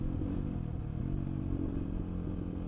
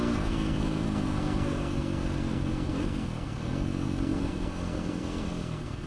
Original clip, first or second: first